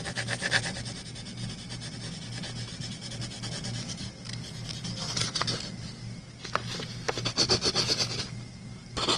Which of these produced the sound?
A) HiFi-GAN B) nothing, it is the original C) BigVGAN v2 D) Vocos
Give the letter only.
B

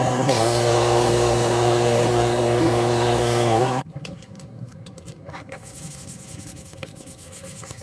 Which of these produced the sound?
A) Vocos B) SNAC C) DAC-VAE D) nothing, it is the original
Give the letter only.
B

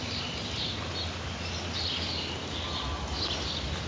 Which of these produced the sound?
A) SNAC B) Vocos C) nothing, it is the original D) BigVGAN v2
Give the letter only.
C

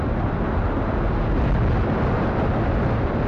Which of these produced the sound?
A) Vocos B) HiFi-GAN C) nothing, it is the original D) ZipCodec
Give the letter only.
C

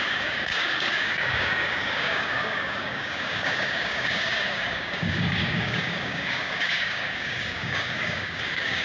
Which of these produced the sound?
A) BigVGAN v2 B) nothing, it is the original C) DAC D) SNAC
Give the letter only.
C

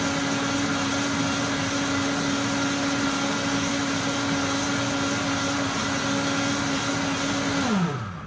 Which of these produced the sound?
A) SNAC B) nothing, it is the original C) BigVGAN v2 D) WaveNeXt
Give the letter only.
B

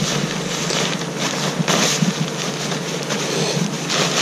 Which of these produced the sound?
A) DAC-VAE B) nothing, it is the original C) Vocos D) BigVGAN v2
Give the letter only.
B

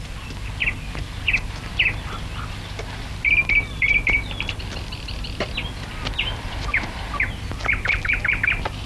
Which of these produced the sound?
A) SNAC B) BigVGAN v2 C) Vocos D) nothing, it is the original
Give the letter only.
D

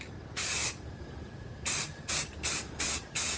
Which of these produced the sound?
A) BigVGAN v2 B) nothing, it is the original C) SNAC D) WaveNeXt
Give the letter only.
A